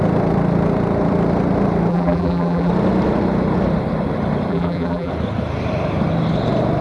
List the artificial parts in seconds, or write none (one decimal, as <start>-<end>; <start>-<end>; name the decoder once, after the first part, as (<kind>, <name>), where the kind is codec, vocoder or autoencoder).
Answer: 1.9-2.7 (vocoder, BigVGAN v2); 4.5-5.1

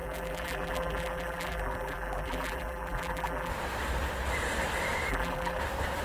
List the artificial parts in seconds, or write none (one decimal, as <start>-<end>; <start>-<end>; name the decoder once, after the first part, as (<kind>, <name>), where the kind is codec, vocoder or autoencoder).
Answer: 0.0-3.5 (vocoder, BigVGAN v2); 5.1-5.6

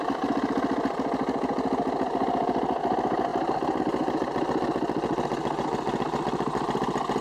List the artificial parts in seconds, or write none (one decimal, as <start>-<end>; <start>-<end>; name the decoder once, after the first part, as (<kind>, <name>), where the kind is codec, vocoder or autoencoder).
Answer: 3.3-3.8 (vocoder, BigVGAN v2)